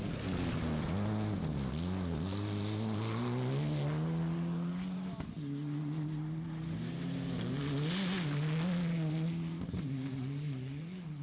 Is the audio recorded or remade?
recorded